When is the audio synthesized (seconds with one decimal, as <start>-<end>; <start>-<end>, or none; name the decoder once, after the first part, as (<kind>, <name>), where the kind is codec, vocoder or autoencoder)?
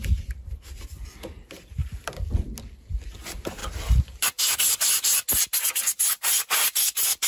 3.6-4.4 (vocoder, BigVGAN v2)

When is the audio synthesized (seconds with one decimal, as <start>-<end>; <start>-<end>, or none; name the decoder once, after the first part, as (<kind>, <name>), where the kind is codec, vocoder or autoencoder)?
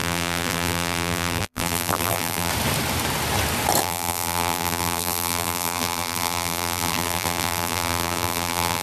0.0-2.5 (vocoder, BigVGAN v2); 3.8-8.8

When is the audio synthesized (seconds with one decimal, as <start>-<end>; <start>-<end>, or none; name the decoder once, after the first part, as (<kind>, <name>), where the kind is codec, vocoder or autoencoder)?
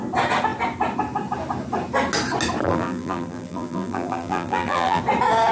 2.6-5.0 (vocoder, BigVGAN v2)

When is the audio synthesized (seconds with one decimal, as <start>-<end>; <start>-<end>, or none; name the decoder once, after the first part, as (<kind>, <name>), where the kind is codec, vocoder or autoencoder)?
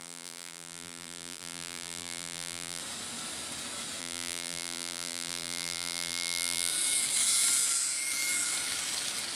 0.0-2.8 (vocoder, BigVGAN v2); 4.0-6.7